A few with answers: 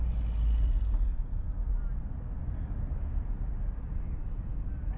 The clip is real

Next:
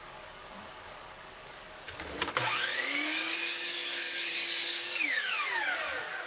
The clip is fake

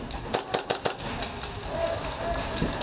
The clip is real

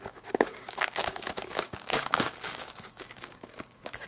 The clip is fake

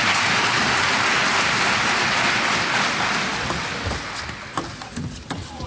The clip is real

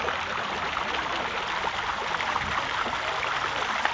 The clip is real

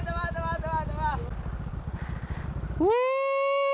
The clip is real